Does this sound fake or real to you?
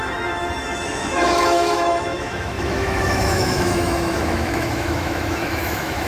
fake